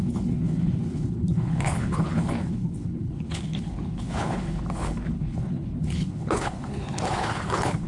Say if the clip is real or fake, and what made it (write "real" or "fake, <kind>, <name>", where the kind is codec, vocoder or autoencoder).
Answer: fake, codec, HILCodec